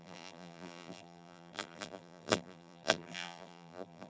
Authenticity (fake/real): fake